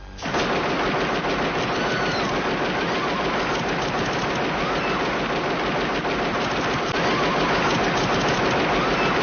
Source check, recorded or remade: recorded